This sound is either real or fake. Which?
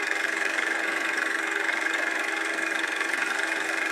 fake